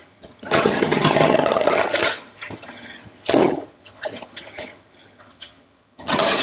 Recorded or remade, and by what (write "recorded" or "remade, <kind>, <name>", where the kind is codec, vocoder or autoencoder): remade, vocoder, HiFi-GAN